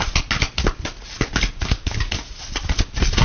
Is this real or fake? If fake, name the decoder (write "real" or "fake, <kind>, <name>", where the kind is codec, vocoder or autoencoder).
real